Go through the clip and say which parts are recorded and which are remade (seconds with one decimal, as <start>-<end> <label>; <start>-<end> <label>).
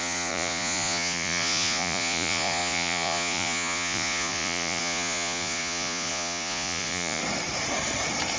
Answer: 0.0-7.2 remade; 7.2-8.4 recorded